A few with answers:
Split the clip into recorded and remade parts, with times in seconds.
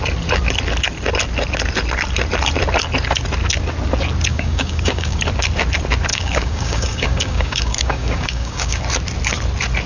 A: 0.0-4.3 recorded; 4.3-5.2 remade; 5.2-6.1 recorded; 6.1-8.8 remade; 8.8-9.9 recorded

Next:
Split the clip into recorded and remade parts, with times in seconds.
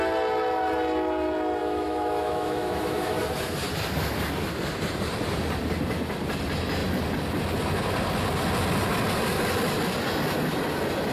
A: 0.0-1.6 recorded; 1.6-3.2 remade; 3.2-11.1 recorded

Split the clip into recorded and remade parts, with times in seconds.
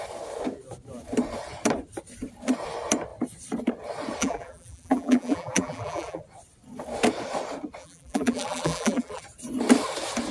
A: 0.0-4.2 recorded; 4.2-6.2 remade; 6.2-7.8 recorded; 7.8-9.2 remade; 9.2-10.3 recorded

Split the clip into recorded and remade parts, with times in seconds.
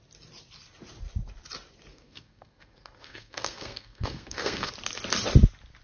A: 0.0-1.9 recorded; 1.9-4.7 remade; 4.7-5.8 recorded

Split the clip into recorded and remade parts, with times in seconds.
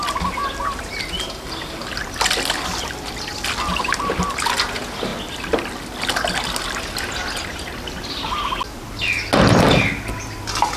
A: 0.0-10.8 recorded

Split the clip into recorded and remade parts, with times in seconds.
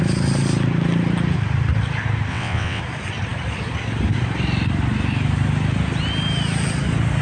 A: 0.0-2.3 recorded; 2.3-2.8 remade; 2.8-7.2 recorded